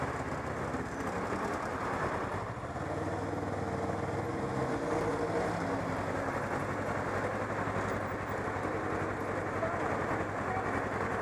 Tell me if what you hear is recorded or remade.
recorded